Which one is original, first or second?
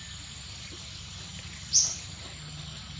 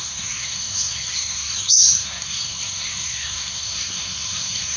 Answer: first